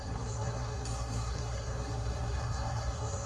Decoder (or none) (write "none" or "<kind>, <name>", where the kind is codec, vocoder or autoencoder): codec, SNAC